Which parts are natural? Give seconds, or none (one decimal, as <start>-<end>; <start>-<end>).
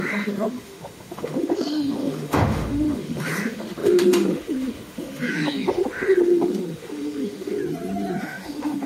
7.6-8.2